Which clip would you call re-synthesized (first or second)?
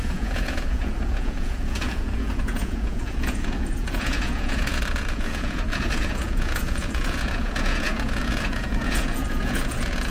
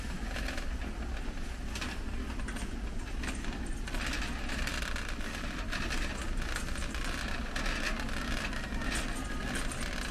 first